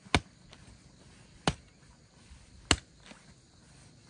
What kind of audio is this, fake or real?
real